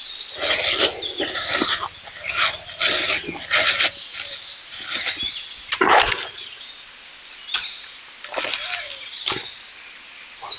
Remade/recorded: recorded